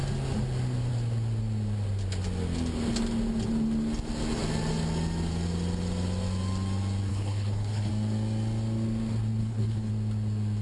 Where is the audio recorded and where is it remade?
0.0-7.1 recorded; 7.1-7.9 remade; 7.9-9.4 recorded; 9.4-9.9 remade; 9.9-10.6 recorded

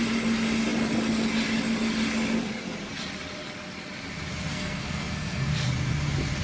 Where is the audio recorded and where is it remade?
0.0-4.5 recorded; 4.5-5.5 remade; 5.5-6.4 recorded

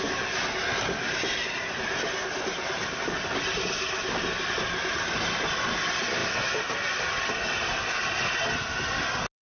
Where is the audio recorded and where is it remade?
0.0-9.4 recorded

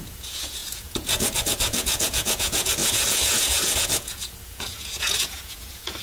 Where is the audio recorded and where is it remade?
0.0-6.0 remade

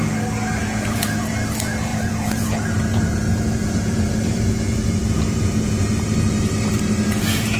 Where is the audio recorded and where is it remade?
0.0-0.6 recorded; 0.6-1.3 remade; 1.3-1.9 recorded; 1.9-6.5 remade; 6.5-7.6 recorded

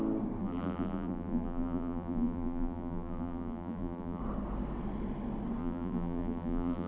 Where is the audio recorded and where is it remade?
0.0-0.4 recorded; 0.4-4.2 remade; 4.2-5.6 recorded; 5.6-6.9 remade

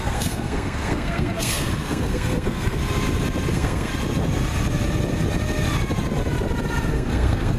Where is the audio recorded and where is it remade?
0.0-2.8 remade; 2.8-3.5 recorded; 3.5-3.9 remade; 3.9-6.9 recorded; 6.9-7.6 remade

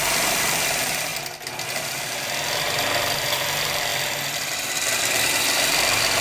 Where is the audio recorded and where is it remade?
0.0-1.1 remade; 1.1-3.2 recorded; 3.2-6.2 remade